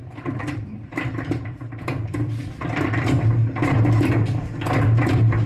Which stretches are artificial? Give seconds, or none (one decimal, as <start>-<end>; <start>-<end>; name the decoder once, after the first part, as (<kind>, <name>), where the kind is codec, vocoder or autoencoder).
0.0-3.4 (vocoder, BigVGAN v2); 4.3-5.5